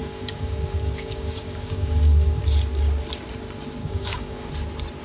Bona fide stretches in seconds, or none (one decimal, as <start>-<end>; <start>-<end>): 2.4-3.8; 4.5-5.0